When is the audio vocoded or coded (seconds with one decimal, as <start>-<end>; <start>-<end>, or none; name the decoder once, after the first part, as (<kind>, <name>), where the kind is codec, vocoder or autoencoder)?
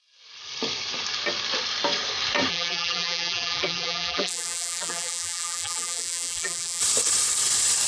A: 2.5-6.8 (vocoder, BigVGAN v2)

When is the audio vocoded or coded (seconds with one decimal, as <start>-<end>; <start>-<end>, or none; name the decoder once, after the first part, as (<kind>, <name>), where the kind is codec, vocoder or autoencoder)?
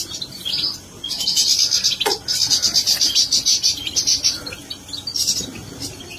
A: none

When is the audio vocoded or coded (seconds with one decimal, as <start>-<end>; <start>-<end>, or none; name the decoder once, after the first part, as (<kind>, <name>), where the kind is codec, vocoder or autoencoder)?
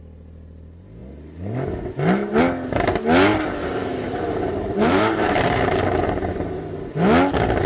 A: 3.3-6.1 (vocoder, BigVGAN v2)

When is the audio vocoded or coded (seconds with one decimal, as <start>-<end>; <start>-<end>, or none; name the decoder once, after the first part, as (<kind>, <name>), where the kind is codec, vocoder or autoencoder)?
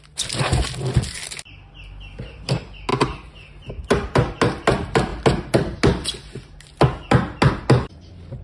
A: none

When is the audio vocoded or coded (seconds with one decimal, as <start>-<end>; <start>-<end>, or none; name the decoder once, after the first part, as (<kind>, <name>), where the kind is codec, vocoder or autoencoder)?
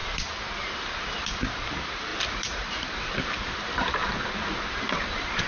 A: 0.0-4.0 (vocoder, BigVGAN v2)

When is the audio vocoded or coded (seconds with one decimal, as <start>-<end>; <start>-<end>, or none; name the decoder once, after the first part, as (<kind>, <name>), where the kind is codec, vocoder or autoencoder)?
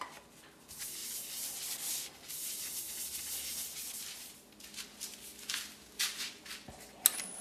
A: 1.0-2.9 (vocoder, BigVGAN v2)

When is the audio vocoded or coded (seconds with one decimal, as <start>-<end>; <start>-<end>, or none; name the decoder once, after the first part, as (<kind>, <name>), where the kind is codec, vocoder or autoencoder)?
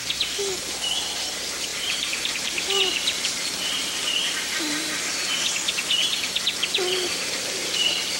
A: 1.7-5.1 (vocoder, BigVGAN v2)